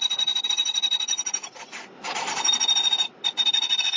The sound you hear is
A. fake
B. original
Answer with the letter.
B